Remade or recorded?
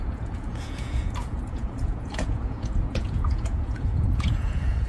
remade